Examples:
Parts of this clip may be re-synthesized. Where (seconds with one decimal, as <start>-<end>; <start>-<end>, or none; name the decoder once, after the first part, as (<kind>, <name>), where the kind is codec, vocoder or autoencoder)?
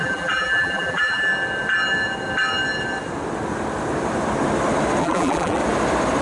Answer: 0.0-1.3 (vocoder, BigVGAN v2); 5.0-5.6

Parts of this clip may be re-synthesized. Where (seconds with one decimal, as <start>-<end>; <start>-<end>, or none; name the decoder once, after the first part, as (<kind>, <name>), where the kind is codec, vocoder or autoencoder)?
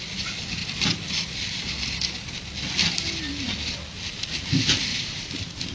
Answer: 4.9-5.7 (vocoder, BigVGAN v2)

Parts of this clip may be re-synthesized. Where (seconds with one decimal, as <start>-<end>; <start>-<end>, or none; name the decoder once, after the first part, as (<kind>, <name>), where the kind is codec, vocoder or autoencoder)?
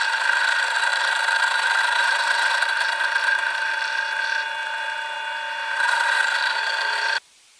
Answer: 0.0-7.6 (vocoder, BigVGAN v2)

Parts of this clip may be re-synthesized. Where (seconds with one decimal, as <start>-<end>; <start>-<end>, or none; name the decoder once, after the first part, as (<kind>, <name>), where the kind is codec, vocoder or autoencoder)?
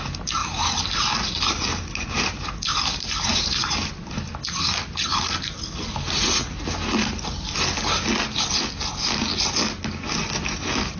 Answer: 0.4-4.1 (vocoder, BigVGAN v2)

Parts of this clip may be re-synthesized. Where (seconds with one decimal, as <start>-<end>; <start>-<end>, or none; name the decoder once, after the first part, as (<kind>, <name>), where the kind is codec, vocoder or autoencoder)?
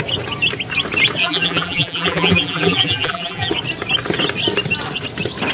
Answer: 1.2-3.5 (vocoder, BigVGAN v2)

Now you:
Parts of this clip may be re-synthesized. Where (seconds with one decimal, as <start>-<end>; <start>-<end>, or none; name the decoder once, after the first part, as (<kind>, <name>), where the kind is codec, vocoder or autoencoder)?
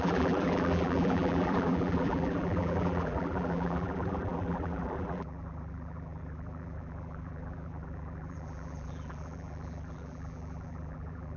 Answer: 0.0-11.4 (vocoder, BigVGAN v2)